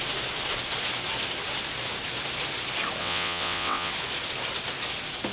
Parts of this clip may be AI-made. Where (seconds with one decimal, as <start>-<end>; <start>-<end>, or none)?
3.0-3.9

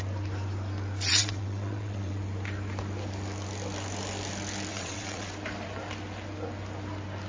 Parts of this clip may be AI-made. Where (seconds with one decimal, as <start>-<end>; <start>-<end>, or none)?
1.1-2.2; 4.7-5.3